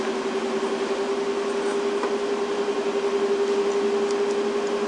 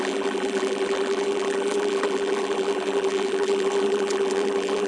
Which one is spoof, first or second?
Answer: second